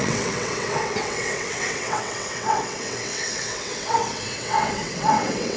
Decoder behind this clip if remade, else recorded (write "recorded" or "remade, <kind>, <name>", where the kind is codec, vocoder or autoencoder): remade, vocoder, WaveNeXt